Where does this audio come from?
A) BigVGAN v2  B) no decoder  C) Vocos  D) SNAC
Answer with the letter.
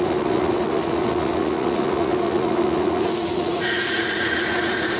C